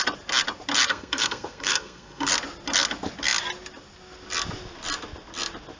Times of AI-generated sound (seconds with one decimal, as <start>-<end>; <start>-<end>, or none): 0.9-2.3